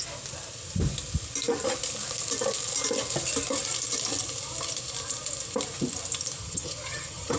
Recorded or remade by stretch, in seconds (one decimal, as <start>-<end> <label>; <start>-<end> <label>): 0.0-6.4 recorded; 6.4-7.4 remade